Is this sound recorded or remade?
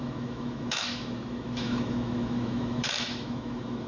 remade